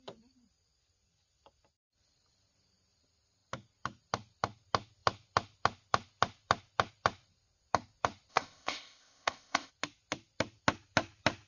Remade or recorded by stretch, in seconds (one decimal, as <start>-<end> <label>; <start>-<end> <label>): 0.0-8.3 recorded; 8.3-9.7 remade; 9.7-11.5 recorded